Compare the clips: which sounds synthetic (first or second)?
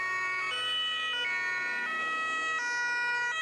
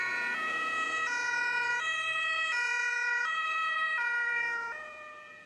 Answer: second